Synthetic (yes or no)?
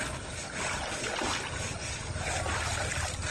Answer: no